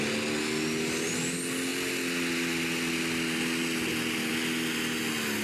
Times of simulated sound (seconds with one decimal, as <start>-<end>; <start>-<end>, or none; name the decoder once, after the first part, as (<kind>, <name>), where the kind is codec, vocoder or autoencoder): none